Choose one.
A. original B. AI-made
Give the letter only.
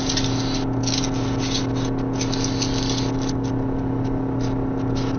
A